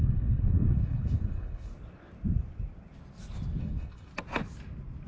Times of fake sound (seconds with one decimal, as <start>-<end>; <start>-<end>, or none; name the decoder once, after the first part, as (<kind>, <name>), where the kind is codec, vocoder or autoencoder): 0.0-1.7 (codec, HILCodec); 3.6-4.1